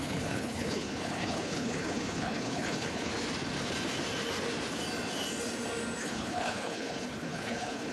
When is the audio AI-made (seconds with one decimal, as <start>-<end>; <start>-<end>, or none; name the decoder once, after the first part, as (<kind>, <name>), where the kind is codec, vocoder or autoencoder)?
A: 0.0-3.1 (codec, HILCodec); 6.0-7.9